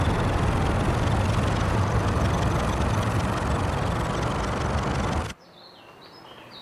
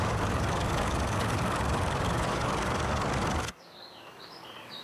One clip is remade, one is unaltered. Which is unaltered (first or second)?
first